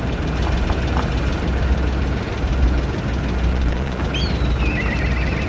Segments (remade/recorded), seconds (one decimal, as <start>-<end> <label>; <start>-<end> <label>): 0.0-3.5 recorded; 3.5-4.0 remade; 4.0-5.5 recorded